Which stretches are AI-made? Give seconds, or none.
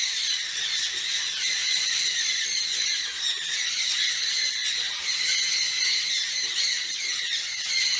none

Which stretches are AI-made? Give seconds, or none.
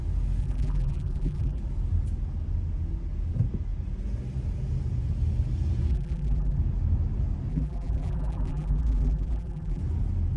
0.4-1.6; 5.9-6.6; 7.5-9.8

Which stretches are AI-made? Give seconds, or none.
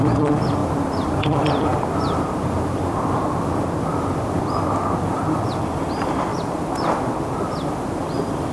0.0-0.6; 1.2-1.7; 5.6-6.3; 8.0-8.5